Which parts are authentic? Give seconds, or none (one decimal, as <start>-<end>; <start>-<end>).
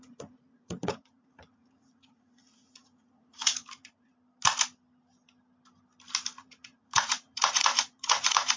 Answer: 4.1-6.4